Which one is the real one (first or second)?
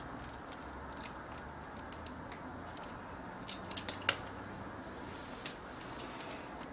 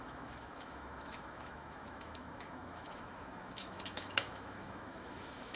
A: first